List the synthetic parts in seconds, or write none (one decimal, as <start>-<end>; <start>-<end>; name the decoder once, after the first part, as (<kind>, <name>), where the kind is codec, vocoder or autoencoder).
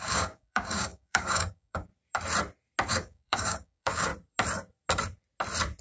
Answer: 0.0-1.9 (codec, DAC); 2.9-4.1